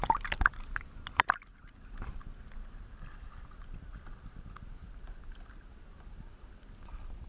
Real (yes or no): yes